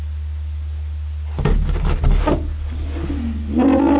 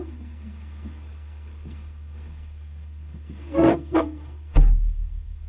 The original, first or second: first